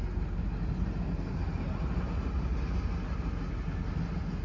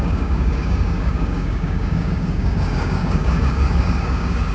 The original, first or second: first